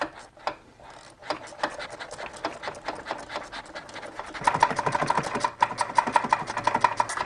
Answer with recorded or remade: recorded